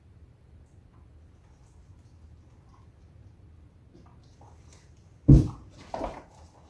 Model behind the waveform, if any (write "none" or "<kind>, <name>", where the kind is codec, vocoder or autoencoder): none